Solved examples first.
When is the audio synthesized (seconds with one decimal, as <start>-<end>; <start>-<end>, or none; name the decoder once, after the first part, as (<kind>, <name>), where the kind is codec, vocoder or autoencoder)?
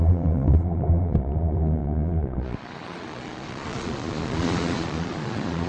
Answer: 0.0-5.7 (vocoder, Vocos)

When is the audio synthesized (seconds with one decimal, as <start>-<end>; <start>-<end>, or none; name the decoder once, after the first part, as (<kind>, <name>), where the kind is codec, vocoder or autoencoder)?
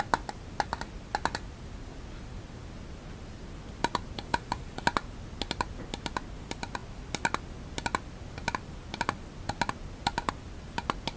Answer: 4.3-4.8 (vocoder, Vocos)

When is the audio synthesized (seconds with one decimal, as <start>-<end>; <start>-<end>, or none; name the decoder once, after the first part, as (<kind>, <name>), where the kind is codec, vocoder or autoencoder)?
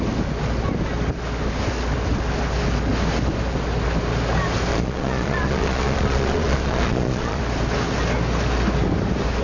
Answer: 4.7-7.4 (vocoder, Vocos)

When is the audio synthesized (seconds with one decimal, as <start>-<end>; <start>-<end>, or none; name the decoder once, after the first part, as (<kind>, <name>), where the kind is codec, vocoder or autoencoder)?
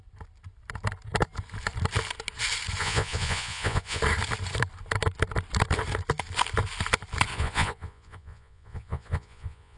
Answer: 2.8-4.0 (vocoder, Vocos); 7.3-9.8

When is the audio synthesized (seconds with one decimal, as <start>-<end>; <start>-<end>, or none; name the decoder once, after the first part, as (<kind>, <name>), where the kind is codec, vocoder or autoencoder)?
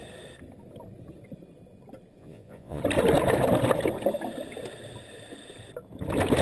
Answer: 2.2-2.8 (vocoder, Vocos)